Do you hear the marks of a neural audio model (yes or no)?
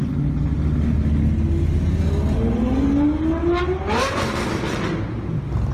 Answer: no